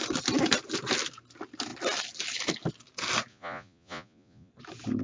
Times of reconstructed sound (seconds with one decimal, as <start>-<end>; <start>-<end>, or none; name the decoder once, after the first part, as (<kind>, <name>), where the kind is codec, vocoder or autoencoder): 3.3-4.5 (vocoder, Vocos)